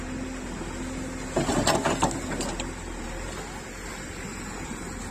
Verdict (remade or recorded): recorded